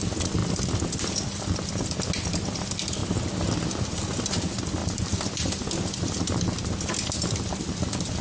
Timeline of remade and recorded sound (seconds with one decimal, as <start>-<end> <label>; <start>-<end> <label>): 0.0-8.2 recorded